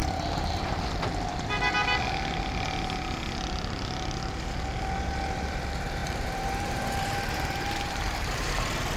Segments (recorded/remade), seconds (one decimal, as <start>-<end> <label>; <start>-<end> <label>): 0.0-0.8 remade; 0.8-6.0 recorded; 6.0-8.5 remade; 8.5-9.0 recorded